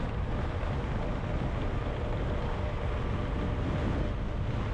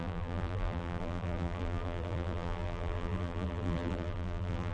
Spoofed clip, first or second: second